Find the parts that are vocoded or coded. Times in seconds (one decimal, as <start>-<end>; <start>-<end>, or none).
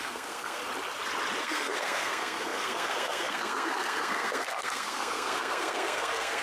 0.0-0.6; 1.4-6.4